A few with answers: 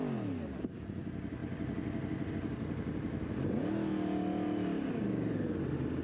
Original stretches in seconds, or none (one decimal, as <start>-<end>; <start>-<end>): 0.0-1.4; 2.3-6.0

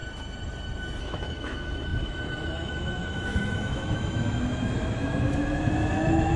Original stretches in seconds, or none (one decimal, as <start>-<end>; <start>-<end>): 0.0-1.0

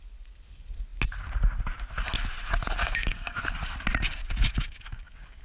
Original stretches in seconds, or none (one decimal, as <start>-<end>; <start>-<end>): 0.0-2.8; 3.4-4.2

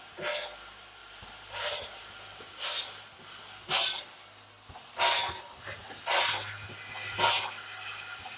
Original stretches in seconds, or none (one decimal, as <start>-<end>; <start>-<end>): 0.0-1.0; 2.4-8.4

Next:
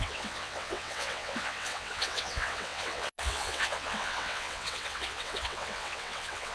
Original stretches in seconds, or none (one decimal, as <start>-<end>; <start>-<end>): none